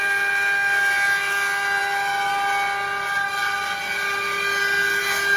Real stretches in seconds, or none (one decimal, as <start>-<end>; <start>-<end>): 0.0-5.4

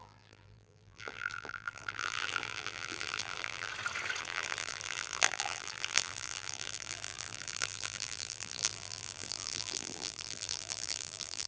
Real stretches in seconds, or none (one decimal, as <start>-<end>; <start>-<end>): 3.7-4.2

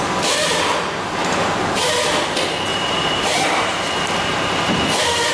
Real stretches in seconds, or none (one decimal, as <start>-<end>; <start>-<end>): 0.0-2.7; 4.4-5.3

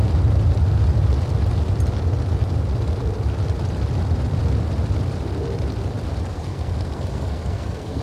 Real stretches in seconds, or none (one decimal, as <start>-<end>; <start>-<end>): 0.0-6.3

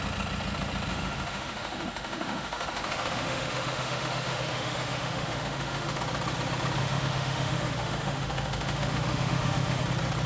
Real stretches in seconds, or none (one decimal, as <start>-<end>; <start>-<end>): 0.0-0.9; 6.0-6.8; 9.8-10.3

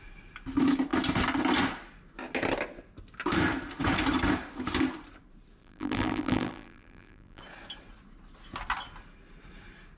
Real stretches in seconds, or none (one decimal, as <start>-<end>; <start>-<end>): 0.0-5.6; 7.4-10.0

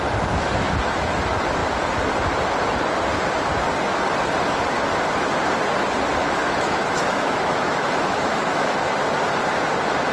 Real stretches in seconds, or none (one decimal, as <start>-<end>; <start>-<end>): 0.0-6.2; 8.9-10.1

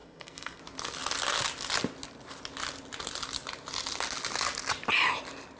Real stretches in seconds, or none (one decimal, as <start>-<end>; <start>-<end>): 0.6-5.6